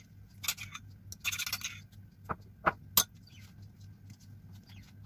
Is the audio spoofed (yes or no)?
no